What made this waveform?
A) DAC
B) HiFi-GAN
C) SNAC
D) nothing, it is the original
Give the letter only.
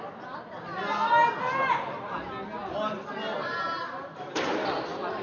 D